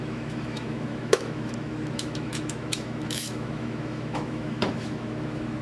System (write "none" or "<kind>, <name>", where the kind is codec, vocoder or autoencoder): autoencoder, DAC-VAE